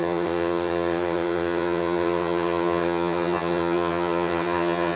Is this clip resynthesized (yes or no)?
yes